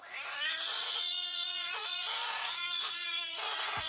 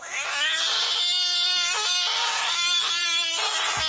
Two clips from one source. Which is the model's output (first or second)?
first